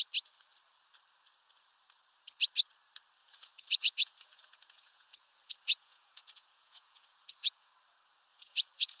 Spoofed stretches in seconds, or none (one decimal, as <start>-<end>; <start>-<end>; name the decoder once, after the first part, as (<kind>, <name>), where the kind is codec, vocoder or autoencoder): 3.2-7.7 (vocoder, Vocos); 8.3-9.0